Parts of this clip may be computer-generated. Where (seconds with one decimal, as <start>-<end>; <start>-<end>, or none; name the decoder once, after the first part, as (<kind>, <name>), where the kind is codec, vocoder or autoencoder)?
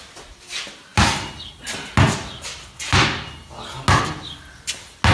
none